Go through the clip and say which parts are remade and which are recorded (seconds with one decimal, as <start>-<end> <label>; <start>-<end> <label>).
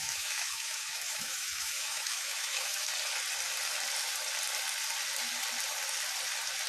0.0-2.9 remade; 2.9-6.7 recorded